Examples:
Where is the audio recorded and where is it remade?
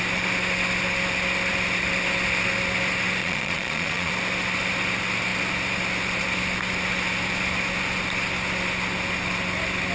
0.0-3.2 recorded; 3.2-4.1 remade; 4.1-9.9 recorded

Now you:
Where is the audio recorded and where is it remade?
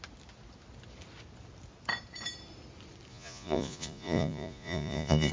0.0-3.1 recorded; 3.1-5.3 remade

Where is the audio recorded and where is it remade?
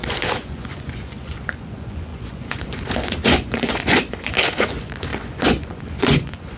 0.0-6.6 remade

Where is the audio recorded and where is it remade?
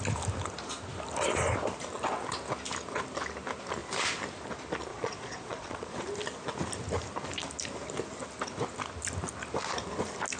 0.0-4.9 recorded; 4.9-5.9 remade; 5.9-10.4 recorded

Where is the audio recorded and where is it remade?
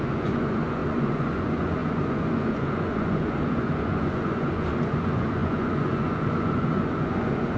0.0-7.6 remade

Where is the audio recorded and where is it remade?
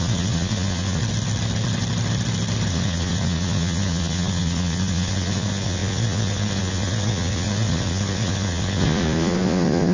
0.0-1.0 remade; 1.0-2.7 recorded; 2.7-9.9 remade